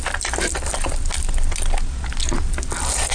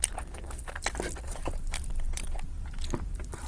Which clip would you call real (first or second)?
first